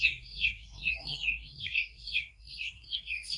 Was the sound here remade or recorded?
remade